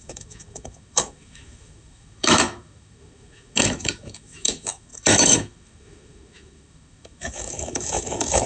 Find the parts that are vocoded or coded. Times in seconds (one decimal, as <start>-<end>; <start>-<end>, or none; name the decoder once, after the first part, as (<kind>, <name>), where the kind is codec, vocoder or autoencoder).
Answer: 0.0-8.5 (autoencoder, DAC-VAE)